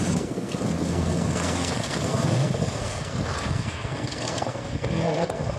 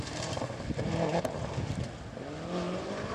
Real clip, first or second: second